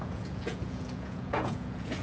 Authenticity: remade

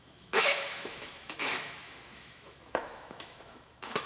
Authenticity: remade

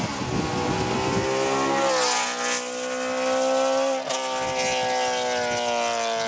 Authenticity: recorded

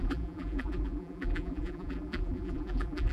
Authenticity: remade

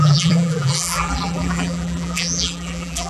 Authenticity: remade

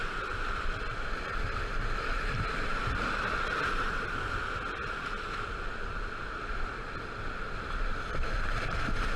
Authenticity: recorded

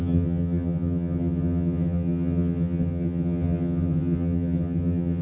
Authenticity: remade